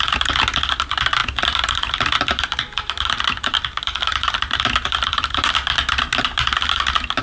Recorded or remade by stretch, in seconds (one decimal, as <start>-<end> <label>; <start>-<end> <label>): 0.0-1.2 recorded; 1.2-5.5 remade; 5.5-7.2 recorded